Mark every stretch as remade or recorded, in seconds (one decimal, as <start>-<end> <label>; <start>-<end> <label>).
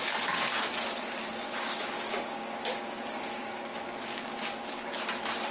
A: 0.0-1.3 recorded; 1.3-4.6 remade; 4.6-5.5 recorded